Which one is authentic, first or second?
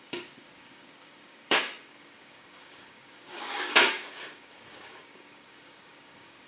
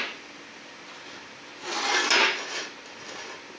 second